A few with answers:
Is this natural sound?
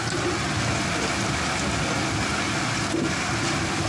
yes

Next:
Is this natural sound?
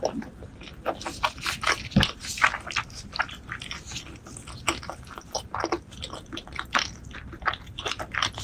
yes